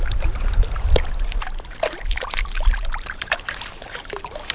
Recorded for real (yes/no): no